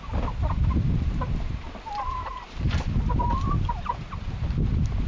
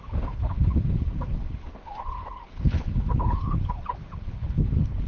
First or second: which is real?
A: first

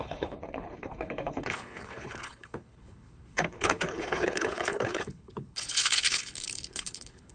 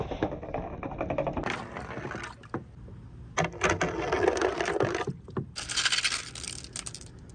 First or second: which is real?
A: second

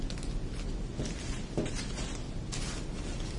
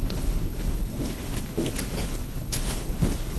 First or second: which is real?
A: first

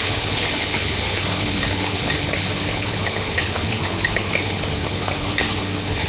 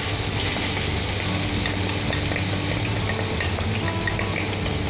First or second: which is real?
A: second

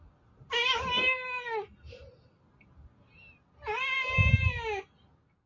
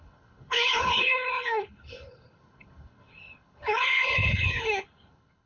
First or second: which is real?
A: first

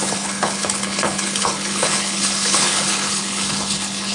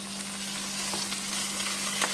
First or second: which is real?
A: second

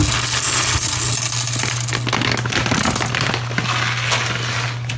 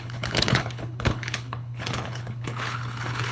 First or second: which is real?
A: first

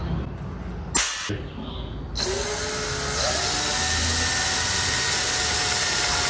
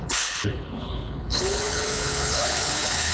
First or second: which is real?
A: first